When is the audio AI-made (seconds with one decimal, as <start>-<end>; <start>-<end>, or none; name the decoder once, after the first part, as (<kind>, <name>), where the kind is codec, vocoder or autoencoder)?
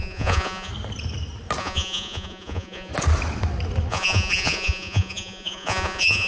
0.0-0.7 (vocoder, Vocos); 1.6-2.9; 3.9-6.3